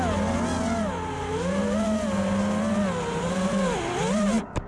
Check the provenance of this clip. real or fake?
real